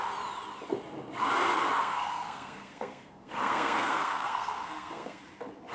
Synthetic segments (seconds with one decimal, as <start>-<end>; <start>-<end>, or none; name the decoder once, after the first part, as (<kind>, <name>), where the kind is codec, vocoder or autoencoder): 1.8-5.2 (codec, SNAC)